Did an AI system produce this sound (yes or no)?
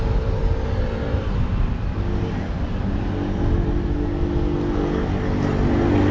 no